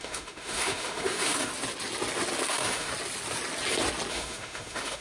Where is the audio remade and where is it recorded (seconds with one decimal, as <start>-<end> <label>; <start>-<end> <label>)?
0.0-1.5 remade; 1.5-2.5 recorded; 2.5-2.9 remade; 2.9-4.1 recorded; 4.1-5.0 remade